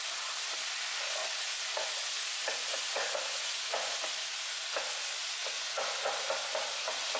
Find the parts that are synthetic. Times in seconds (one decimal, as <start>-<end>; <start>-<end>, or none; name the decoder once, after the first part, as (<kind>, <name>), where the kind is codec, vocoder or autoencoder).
1.2-2.2 (vocoder, Vocos); 2.7-4.0; 5.4-6.1